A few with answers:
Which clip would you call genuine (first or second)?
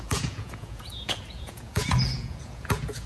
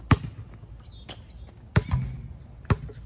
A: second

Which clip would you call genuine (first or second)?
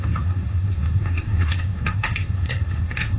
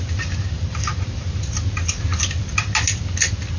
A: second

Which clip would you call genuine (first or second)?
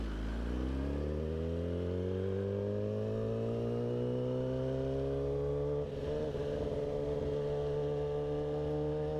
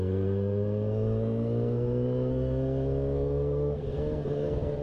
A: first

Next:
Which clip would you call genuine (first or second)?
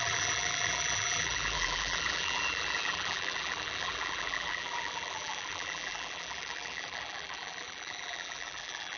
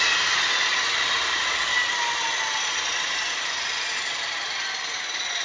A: second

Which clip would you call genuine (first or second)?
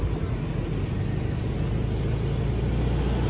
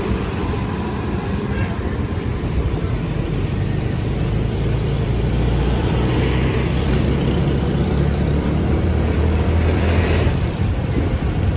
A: first